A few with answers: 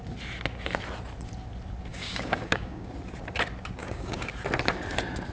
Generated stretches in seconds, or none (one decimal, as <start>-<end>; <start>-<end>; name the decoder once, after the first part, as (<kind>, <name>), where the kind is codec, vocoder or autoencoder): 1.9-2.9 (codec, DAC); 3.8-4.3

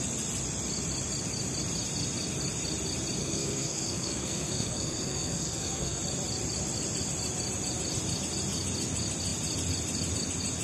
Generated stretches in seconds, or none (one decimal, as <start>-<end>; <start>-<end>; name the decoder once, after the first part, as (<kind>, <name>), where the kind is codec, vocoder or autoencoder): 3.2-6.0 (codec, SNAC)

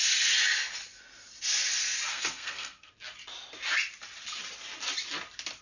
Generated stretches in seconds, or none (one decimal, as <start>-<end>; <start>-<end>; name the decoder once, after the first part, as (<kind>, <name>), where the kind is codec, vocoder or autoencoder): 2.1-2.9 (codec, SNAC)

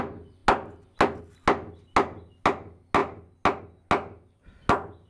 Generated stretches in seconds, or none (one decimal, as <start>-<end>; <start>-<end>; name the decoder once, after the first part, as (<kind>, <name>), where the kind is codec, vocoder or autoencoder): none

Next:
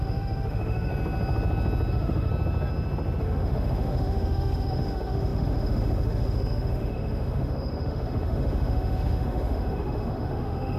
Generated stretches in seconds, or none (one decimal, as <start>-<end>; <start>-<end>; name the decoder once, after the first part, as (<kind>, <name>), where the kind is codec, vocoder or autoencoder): 0.0-0.9 (autoencoder, DAC-VAE); 1.9-2.3; 3.2-10.8

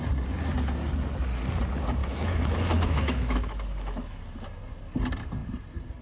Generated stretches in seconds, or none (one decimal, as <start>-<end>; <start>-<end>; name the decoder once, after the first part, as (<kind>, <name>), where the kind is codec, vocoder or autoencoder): 2.0-4.2 (autoencoder, DAC-VAE)

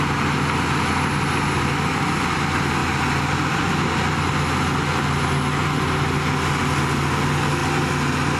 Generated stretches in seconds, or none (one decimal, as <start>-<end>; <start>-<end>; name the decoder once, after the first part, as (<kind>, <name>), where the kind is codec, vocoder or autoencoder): none

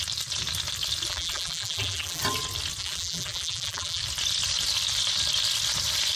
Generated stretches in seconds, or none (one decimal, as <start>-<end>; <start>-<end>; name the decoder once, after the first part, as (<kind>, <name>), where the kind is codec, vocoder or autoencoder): 1.1-2.2 (vocoder, BigVGAN v2); 2.8-4.0